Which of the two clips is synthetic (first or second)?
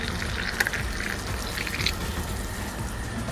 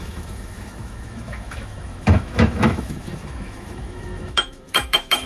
second